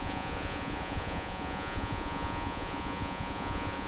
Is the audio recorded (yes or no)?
no